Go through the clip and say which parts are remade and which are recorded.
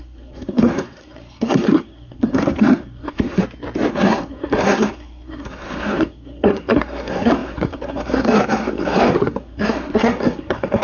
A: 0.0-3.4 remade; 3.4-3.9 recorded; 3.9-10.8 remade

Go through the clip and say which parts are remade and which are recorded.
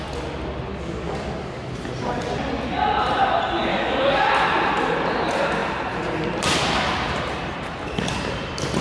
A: 0.0-0.7 recorded; 0.7-1.7 remade; 1.7-3.7 recorded; 3.7-4.3 remade; 4.3-8.8 recorded